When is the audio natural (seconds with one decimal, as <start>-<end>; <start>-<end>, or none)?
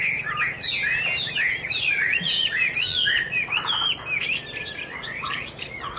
0.0-1.5; 3.7-4.6